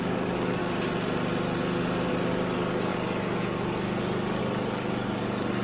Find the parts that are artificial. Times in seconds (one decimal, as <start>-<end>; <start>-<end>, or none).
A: 0.0-0.6; 2.1-5.6